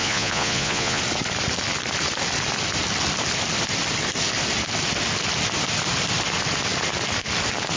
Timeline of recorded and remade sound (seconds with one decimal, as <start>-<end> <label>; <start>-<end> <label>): 0.0-1.0 remade; 1.0-7.8 recorded